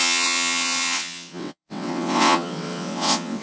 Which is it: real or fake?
fake